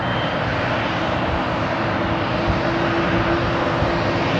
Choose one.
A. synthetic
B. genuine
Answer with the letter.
B